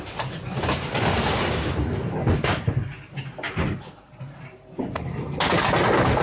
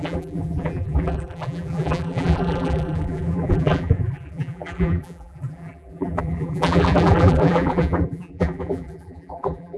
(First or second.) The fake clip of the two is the second